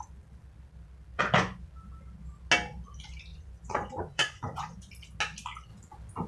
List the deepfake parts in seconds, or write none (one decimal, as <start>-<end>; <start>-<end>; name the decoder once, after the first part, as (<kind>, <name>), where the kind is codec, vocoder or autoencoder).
1.1-1.7 (vocoder, Vocos); 3.3-4.8